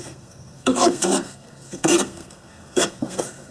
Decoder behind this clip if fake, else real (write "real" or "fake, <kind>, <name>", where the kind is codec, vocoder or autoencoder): fake, codec, SNAC